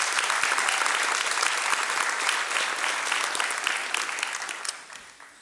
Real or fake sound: real